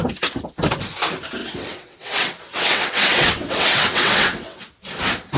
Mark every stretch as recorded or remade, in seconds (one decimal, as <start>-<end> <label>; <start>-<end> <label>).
0.0-1.4 recorded; 1.4-4.6 remade; 4.6-5.4 recorded